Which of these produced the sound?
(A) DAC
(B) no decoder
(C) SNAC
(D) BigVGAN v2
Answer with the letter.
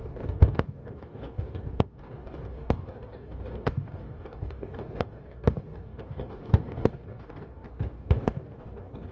A